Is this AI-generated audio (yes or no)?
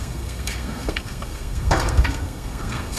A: yes